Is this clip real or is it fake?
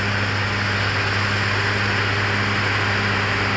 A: real